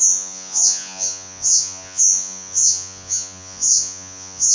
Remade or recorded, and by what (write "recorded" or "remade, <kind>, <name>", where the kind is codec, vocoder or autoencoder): remade, vocoder, Vocos